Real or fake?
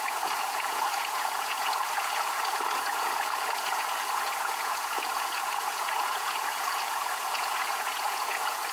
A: fake